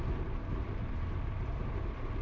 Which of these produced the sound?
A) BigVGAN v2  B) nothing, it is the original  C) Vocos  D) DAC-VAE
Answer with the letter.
B